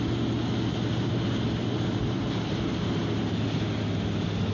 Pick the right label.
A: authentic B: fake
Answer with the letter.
A